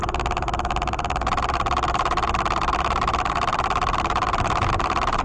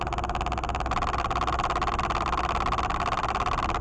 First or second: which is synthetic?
first